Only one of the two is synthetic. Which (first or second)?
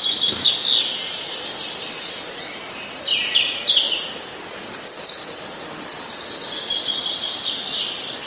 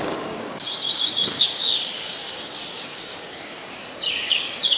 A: second